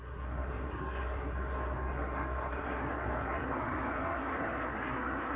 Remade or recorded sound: remade